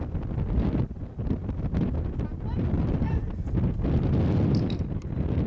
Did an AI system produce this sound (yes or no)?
no